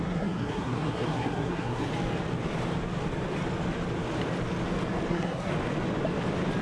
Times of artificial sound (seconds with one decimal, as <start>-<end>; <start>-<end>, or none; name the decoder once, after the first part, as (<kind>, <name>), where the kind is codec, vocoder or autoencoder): 0.0-1.9 (codec, SNAC); 5.1-5.5

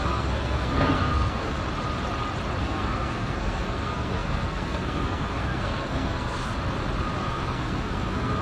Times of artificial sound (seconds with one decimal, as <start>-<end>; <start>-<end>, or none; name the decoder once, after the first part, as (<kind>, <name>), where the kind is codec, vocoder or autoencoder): 0.0-1.6 (codec, SNAC); 2.6-6.5; 7.2-8.4

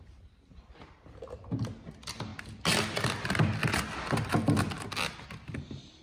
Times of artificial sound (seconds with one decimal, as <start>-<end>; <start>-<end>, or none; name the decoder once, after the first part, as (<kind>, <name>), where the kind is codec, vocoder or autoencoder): none

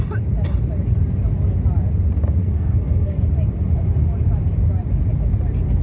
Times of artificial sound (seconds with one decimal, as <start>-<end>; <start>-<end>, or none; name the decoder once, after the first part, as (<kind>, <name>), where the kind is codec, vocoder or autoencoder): 2.4-3.2 (codec, SNAC)

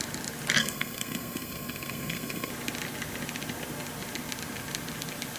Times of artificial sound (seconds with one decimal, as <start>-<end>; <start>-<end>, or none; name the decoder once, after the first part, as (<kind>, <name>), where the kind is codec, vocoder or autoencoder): 0.6-2.5 (codec, SNAC)

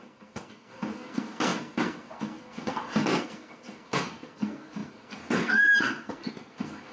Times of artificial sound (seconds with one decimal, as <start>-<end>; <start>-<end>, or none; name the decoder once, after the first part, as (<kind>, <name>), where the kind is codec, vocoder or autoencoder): 0.0-6.9 (codec, SNAC)

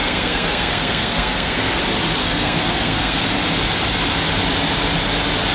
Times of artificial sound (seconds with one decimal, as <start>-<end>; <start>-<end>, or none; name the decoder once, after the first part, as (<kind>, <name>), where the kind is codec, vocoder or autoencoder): 0.0-1.8 (codec, SNAC); 2.2-3.2